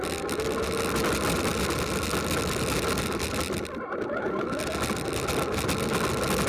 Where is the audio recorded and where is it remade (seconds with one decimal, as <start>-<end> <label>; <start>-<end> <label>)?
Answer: 0.0-6.5 recorded

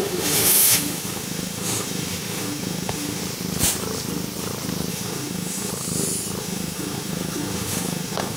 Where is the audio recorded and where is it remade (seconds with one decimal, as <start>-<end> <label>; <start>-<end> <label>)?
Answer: 0.0-3.2 remade; 3.2-4.9 recorded; 4.9-5.7 remade; 5.7-6.4 recorded; 6.4-8.4 remade